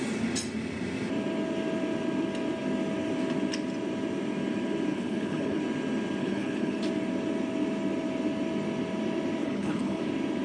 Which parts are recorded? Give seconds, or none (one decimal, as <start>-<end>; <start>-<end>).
0.0-4.9; 5.6-6.2; 6.8-9.4; 10.0-10.4

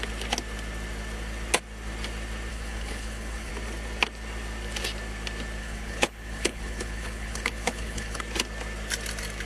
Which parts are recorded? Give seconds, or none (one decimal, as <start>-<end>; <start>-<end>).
0.0-2.5; 3.5-5.6; 8.2-9.5

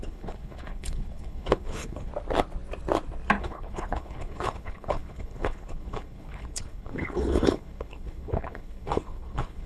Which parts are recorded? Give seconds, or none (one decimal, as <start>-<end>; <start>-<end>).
2.1-3.4

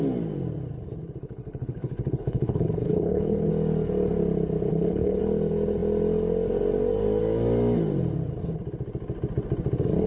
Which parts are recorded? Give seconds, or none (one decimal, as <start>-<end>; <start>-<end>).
0.0-1.2; 3.5-4.7; 5.2-10.1

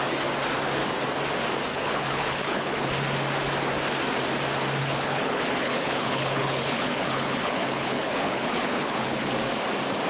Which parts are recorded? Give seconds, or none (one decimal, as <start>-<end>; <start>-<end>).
0.0-1.7; 2.9-4.8; 9.3-10.1

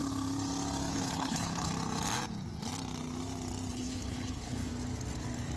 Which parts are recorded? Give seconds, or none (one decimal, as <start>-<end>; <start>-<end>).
0.0-0.9; 1.7-3.7; 4.7-5.6

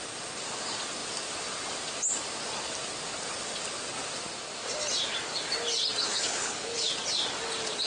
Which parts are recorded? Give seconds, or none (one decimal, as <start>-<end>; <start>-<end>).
0.0-6.1; 6.9-7.9

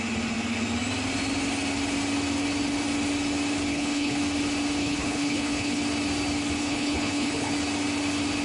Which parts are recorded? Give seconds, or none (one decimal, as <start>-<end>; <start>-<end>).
0.0-3.7; 4.2-4.8; 5.8-6.6; 7.5-8.4